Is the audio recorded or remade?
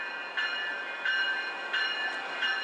recorded